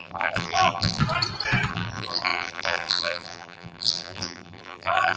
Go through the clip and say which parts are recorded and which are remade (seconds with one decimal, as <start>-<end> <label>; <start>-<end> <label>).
0.0-1.0 remade; 1.0-1.7 recorded; 1.7-5.2 remade